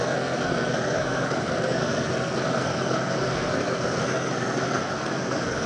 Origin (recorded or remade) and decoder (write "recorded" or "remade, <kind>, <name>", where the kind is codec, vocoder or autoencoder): remade, codec, SNAC